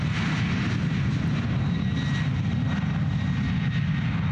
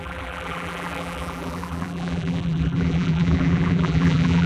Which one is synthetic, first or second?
second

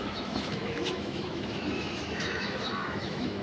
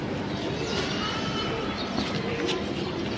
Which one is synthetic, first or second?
first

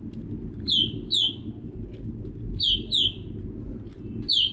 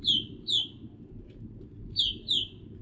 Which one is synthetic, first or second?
second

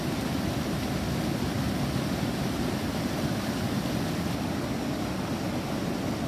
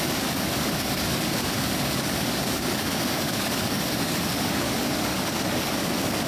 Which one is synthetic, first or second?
second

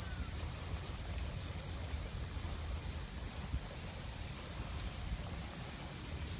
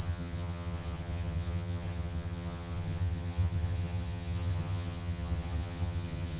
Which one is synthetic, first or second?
second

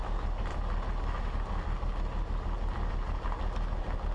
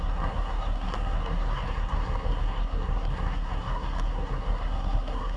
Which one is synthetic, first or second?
second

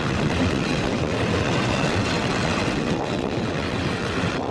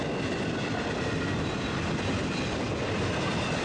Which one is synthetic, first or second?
first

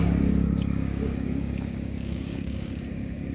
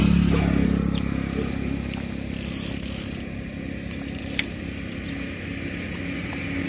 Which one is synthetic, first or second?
first